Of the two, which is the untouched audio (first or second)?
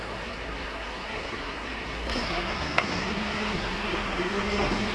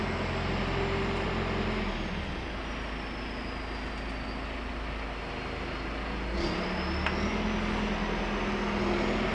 second